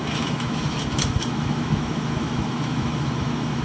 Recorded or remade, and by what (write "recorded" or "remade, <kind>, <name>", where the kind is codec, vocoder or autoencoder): remade, autoencoder, DAC-VAE